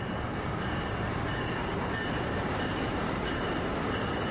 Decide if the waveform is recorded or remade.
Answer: remade